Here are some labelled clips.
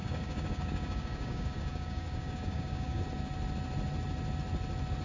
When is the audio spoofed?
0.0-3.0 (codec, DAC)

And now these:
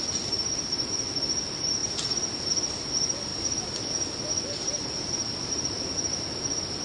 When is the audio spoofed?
none

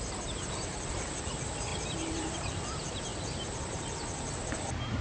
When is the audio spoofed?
0.0-5.0 (vocoder, BigVGAN v2)

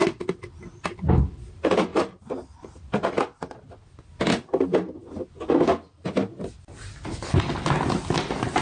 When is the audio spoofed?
1.9-2.9 (vocoder, BigVGAN v2)

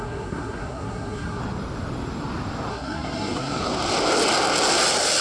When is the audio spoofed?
0.0-1.4 (codec, SNAC); 2.7-3.6

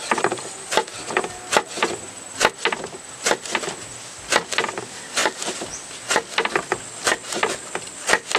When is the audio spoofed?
none